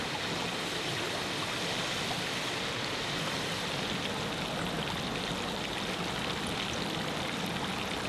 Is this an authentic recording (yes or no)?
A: yes